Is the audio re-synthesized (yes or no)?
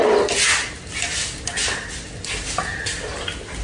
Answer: no